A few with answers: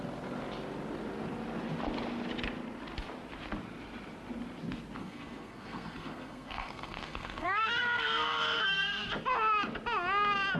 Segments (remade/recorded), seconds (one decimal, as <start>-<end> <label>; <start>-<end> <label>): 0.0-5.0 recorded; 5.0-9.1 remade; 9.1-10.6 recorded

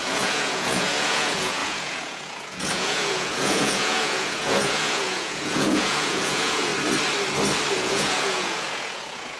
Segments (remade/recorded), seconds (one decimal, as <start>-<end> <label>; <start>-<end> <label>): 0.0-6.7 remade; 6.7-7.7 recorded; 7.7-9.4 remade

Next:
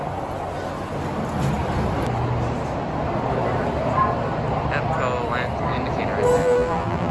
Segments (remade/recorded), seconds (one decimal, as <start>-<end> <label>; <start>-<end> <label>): 0.0-6.4 recorded; 6.4-7.1 remade

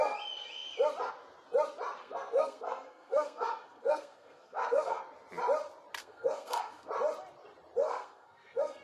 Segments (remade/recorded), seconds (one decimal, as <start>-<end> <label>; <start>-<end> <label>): 0.0-2.0 recorded; 2.0-5.0 remade; 5.0-6.0 recorded; 6.0-6.9 remade; 6.9-7.8 recorded; 7.8-8.8 remade

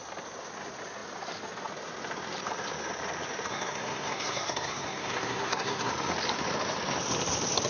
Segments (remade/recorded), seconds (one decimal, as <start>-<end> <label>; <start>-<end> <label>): 0.0-3.5 recorded; 3.5-5.9 remade; 5.9-7.7 recorded